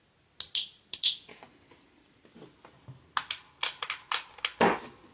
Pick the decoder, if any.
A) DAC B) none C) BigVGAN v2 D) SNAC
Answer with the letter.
B